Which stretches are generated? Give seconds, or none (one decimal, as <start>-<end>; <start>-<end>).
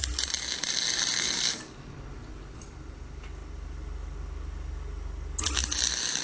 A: none